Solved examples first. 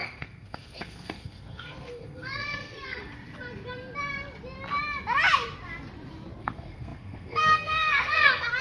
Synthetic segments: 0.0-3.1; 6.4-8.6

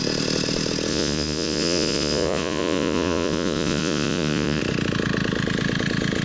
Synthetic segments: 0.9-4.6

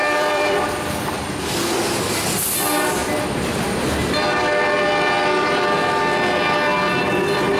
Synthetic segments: 0.0-0.6

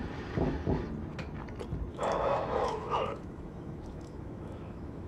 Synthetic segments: 1.9-5.1

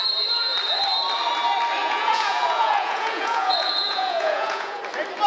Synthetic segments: 1.8-4.8

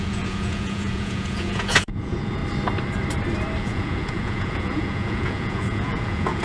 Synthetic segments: 0.0-2.4; 3.6-6.4